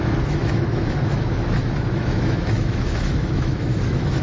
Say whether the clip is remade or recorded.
remade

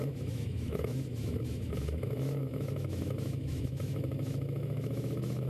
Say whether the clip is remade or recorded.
remade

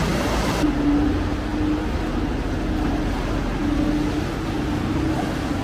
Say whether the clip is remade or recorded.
recorded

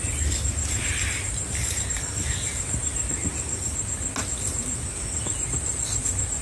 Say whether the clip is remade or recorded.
recorded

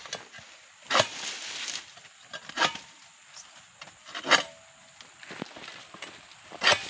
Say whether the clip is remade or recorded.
recorded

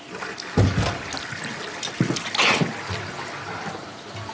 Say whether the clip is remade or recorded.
recorded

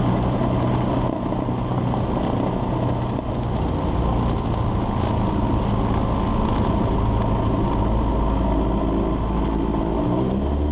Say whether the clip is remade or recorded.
recorded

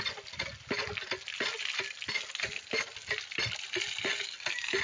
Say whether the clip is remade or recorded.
recorded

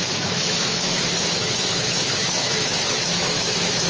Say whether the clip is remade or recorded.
remade